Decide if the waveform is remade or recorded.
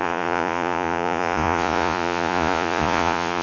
remade